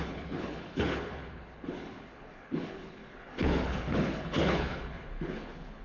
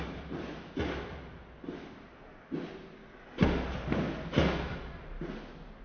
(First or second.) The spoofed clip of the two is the first